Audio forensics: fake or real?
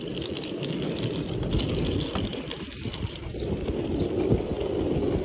fake